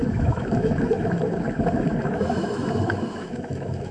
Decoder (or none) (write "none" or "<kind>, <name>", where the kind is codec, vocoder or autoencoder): autoencoder, DAC-VAE